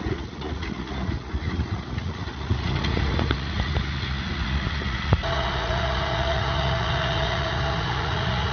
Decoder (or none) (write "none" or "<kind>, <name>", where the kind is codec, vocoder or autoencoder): vocoder, Vocos